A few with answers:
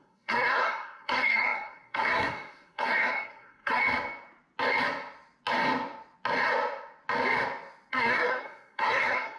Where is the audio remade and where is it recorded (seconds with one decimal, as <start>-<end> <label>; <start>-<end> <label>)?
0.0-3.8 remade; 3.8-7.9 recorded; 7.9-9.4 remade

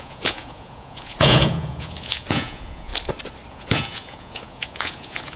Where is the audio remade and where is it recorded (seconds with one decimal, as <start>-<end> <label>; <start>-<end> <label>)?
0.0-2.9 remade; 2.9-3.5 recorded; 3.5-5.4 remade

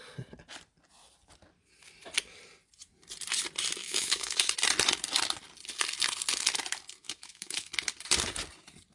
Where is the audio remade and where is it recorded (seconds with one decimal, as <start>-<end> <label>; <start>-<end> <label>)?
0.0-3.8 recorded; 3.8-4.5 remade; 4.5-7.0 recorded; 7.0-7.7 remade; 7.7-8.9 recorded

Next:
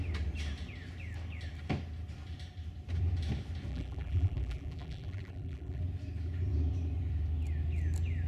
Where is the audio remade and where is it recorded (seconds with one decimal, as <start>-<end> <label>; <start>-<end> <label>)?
0.0-3.7 recorded; 3.7-5.8 remade; 5.8-8.3 recorded

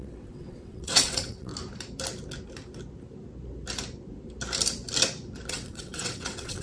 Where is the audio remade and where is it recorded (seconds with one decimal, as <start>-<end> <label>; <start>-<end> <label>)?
0.0-1.5 remade; 1.5-5.5 recorded; 5.5-6.6 remade

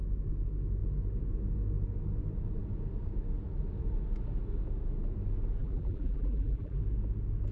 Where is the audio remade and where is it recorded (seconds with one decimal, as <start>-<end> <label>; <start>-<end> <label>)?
0.0-5.6 recorded; 5.6-6.8 remade; 6.8-7.5 recorded

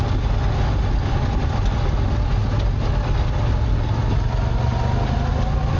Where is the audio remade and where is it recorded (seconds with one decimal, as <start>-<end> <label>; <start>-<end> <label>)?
0.0-5.8 recorded

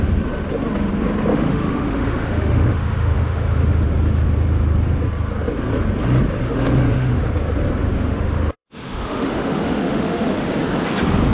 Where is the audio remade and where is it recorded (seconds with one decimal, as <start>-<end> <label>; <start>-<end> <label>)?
0.0-1.3 recorded; 1.3-3.9 remade; 3.9-6.4 recorded; 6.4-7.2 remade; 7.2-7.8 recorded; 7.8-10.5 remade; 10.5-11.3 recorded